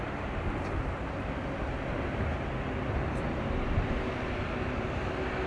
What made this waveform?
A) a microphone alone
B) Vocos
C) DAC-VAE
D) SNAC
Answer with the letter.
A